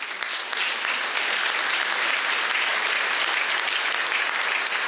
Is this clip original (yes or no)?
yes